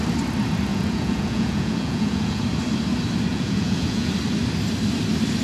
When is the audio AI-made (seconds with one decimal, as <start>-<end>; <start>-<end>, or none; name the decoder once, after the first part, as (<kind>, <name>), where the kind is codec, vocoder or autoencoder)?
0.7-2.4 (vocoder, Vocos); 3.3-4.1